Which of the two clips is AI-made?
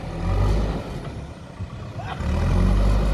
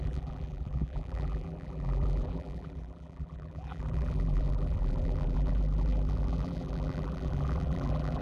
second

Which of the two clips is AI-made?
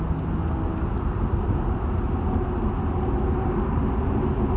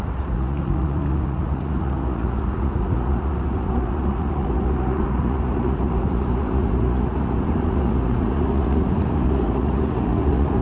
second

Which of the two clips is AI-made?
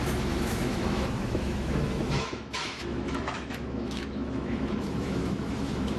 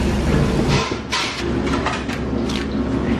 first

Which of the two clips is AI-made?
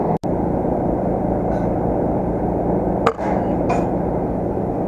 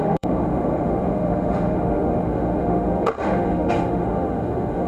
second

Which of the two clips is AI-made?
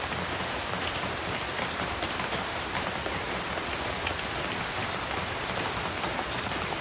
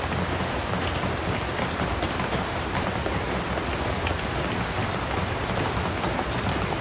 first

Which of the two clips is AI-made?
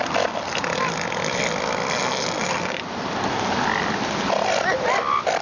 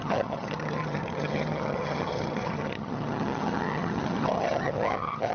second